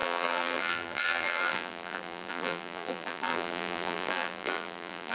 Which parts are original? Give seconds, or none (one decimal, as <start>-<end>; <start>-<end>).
none